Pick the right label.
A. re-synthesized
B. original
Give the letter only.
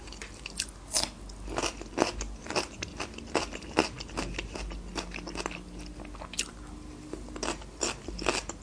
B